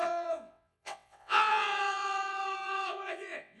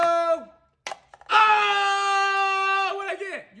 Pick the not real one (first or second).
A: first